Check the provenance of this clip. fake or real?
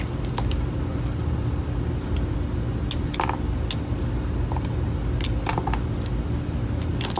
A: real